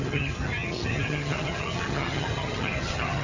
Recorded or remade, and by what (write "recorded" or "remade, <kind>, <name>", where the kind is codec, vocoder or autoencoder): remade, vocoder, HiFi-GAN